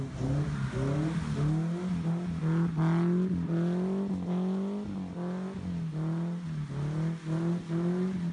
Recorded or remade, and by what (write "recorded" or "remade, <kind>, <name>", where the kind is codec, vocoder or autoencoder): recorded